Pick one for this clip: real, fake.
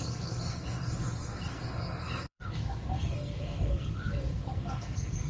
fake